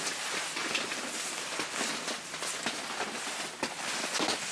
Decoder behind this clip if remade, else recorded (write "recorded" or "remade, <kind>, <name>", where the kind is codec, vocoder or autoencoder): recorded